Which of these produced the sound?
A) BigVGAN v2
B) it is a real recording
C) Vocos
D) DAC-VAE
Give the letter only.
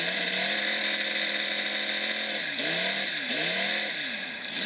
A